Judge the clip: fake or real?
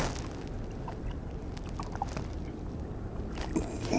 real